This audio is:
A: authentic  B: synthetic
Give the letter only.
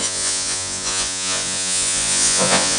B